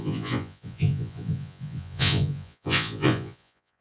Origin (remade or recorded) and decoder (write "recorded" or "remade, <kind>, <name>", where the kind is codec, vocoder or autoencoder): remade, vocoder, Vocos